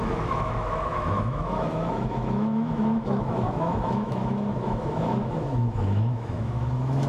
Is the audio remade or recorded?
remade